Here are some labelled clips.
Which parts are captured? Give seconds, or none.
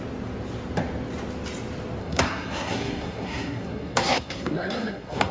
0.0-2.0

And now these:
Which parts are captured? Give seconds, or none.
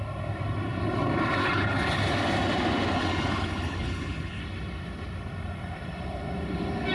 0.0-1.4; 2.0-2.9; 4.4-6.9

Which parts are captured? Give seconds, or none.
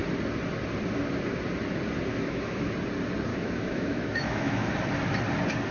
0.0-2.1; 2.7-3.3; 4.7-5.7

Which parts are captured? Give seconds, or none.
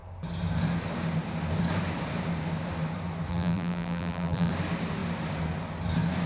0.0-3.3; 4.5-6.3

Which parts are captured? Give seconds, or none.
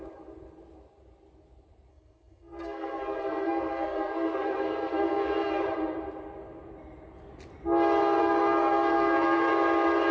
0.0-1.9; 5.6-8.2; 9.5-10.1